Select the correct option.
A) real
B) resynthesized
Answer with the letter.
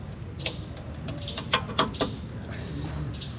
A